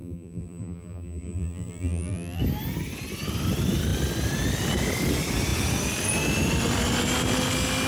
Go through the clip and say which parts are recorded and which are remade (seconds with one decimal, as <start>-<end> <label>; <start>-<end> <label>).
0.0-2.4 remade; 2.4-7.9 recorded